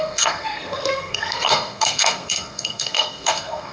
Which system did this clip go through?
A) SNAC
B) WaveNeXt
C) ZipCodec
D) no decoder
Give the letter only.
A